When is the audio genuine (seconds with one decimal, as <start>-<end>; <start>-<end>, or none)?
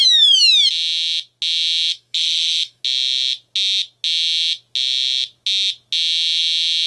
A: 0.0-1.9; 2.8-6.9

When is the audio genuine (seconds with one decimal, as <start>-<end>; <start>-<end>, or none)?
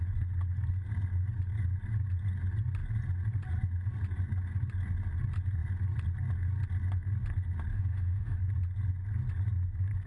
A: 0.0-7.7; 8.4-10.1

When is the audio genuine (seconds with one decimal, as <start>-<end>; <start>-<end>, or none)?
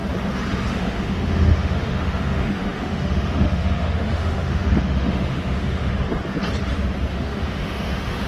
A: 0.0-0.7; 5.9-7.1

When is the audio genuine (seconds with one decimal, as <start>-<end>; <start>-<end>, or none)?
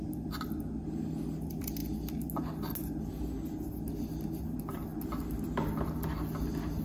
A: 0.0-6.8